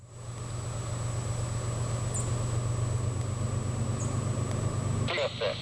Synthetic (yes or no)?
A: no